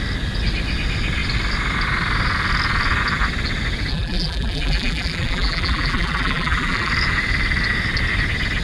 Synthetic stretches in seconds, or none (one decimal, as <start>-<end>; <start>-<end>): 3.9-6.9